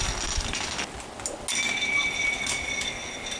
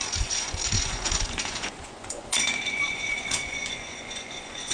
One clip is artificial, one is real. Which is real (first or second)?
first